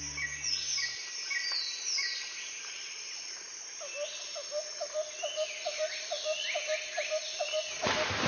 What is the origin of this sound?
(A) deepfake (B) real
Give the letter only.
B